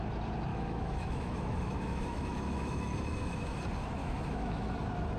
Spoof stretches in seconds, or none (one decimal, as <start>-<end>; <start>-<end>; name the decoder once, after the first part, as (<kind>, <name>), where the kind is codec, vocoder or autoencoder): 0.5-3.6 (autoencoder, DAC-VAE); 4.0-4.7